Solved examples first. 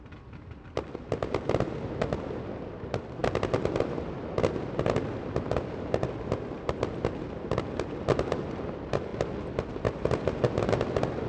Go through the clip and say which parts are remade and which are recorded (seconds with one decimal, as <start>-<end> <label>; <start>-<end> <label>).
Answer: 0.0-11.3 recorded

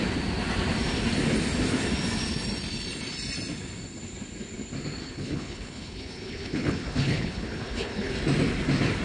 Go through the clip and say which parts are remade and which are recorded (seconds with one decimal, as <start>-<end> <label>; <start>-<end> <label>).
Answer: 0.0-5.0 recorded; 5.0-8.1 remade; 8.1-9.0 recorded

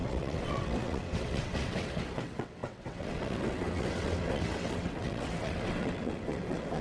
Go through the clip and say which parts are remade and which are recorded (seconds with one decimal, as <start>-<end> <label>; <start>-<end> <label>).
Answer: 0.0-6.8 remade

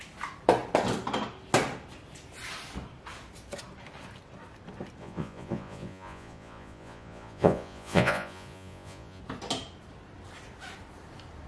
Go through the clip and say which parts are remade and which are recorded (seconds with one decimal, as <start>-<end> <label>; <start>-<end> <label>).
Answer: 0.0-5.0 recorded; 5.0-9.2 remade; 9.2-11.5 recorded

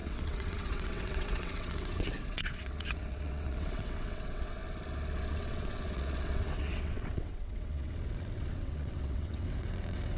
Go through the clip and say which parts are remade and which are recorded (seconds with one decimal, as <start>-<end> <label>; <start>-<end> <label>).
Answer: 0.0-4.6 remade; 4.6-5.3 recorded; 5.3-10.2 remade